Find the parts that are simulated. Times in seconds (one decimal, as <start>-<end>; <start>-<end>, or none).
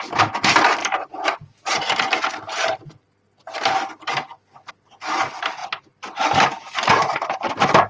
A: 0.8-4.7; 5.6-7.5